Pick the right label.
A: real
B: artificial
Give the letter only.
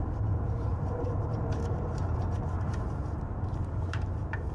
B